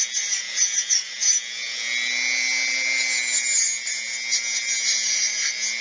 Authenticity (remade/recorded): recorded